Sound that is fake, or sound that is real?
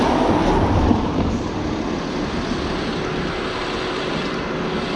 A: real